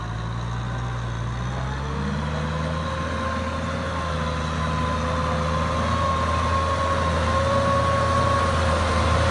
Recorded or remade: recorded